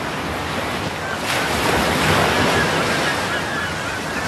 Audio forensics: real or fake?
real